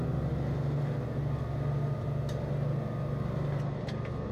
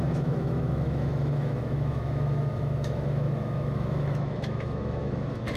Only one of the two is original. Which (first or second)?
first